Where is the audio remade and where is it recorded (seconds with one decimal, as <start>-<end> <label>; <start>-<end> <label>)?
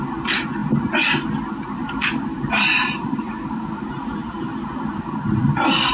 0.0-5.9 recorded